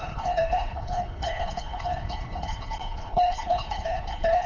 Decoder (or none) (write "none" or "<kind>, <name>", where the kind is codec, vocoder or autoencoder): codec, HILCodec